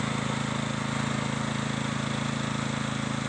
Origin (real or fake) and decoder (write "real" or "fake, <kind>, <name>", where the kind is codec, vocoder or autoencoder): real